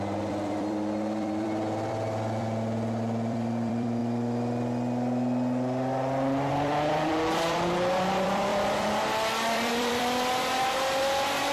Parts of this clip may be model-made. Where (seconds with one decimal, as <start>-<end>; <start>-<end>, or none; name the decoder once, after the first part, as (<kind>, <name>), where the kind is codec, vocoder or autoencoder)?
0.0-4.0 (vocoder, BigVGAN v2); 6.5-11.5